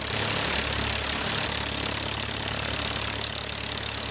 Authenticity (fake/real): real